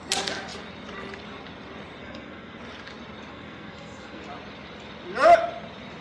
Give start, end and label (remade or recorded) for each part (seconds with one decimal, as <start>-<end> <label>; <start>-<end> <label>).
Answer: 0.0-2.0 recorded; 2.0-2.6 remade; 2.6-3.3 recorded; 3.3-4.2 remade; 4.2-6.0 recorded